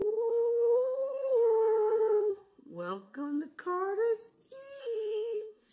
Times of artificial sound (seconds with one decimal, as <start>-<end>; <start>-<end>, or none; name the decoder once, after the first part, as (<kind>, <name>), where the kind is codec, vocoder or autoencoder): 0.0-3.4 (codec, SNAC); 4.8-5.7